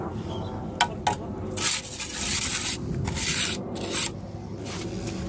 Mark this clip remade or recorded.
recorded